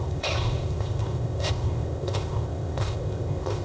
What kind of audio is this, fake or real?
fake